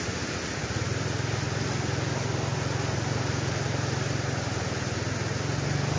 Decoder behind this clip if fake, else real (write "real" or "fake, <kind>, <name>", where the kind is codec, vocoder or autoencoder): real